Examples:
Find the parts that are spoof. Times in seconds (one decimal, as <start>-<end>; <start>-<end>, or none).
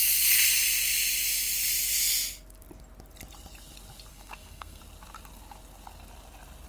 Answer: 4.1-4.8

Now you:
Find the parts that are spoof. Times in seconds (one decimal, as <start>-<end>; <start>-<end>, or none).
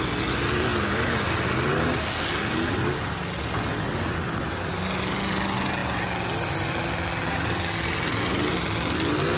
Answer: none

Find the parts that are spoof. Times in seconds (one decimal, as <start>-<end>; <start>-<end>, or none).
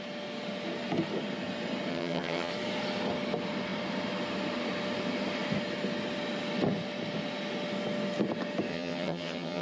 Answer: 1.9-2.5; 8.7-9.6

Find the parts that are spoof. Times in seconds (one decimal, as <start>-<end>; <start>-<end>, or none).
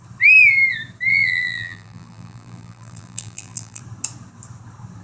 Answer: 1.1-3.8